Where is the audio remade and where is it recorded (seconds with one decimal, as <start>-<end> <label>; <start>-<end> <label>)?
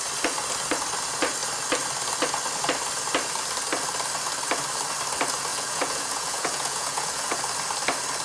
0.0-5.5 recorded; 5.5-7.4 remade; 7.4-8.2 recorded